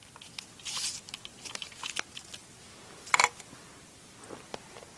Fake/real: real